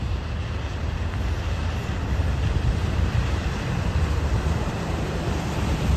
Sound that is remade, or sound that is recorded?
remade